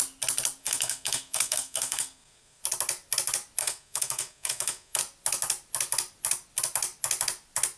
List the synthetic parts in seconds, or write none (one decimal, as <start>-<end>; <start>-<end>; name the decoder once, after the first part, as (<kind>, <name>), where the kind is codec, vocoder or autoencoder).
0.6-2.6 (codec, SNAC); 3.6-5.0